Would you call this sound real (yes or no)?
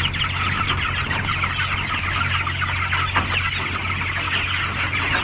yes